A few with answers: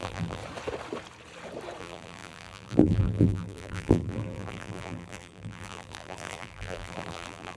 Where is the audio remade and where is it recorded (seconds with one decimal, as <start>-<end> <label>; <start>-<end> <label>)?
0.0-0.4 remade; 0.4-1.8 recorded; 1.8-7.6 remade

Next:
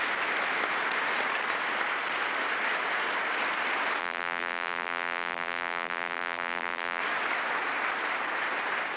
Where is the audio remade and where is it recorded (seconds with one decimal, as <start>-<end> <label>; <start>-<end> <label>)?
0.0-4.0 recorded; 4.0-7.0 remade; 7.0-9.0 recorded

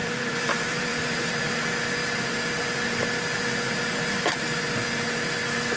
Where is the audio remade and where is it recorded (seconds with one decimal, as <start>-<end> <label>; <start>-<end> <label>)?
0.0-1.3 remade; 1.3-5.8 recorded

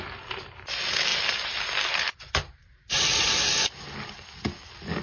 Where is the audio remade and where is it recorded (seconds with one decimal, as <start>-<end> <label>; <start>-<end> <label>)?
0.0-1.1 recorded; 1.1-3.0 remade; 3.0-5.0 recorded

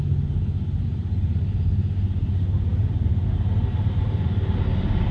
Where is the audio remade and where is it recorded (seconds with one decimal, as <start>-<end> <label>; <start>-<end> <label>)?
0.0-5.1 recorded